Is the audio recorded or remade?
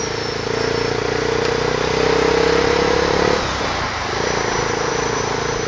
recorded